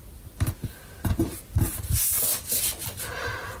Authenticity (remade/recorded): recorded